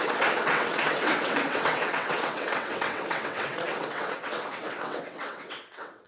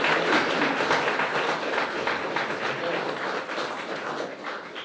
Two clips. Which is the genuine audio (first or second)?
second